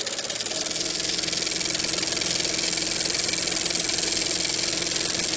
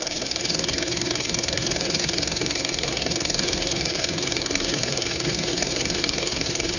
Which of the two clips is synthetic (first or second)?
second